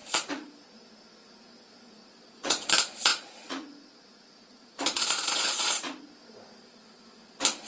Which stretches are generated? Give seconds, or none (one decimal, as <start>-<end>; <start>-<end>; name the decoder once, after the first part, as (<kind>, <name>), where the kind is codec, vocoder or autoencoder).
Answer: 0.0-0.5 (vocoder, Vocos); 2.0-2.7; 3.1-6.1